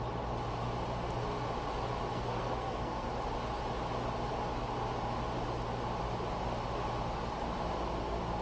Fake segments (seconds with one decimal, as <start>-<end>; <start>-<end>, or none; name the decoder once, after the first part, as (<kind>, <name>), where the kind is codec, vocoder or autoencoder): 2.1-3.1 (codec, SNAC)